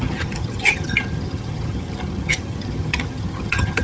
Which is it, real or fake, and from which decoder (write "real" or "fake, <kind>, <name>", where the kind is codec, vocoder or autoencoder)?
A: fake, vocoder, HiFi-GAN